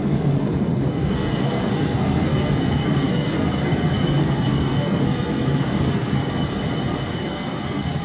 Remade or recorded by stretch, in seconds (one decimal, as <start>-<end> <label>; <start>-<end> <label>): 0.0-6.2 remade; 6.2-7.2 recorded; 7.2-8.0 remade